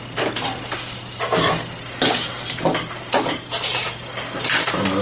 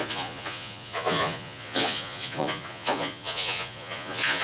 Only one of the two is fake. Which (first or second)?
second